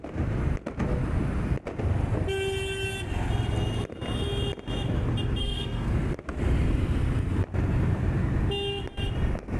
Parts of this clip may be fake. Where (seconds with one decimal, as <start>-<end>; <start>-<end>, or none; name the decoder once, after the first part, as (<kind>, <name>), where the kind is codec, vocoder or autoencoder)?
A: 5.4-5.9 (codec, SNAC)